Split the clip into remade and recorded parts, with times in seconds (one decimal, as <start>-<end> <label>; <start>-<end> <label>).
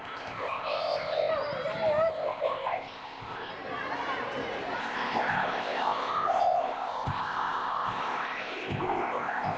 0.0-1.3 remade; 1.3-2.1 recorded; 2.1-3.5 remade; 3.5-4.8 recorded; 4.8-9.6 remade